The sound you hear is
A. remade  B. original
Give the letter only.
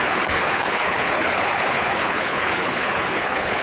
A